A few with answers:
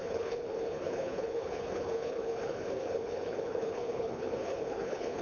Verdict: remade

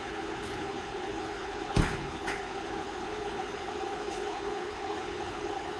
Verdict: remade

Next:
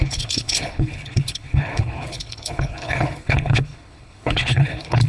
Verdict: remade